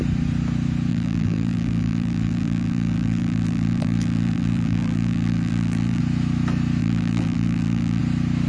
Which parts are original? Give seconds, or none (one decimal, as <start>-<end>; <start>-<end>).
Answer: 0.0-0.9; 6.0-6.8; 8.0-8.5